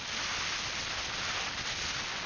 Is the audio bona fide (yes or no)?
yes